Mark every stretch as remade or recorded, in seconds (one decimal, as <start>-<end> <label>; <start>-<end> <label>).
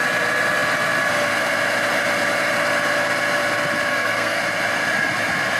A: 0.0-3.9 recorded; 3.9-4.4 remade; 4.4-5.6 recorded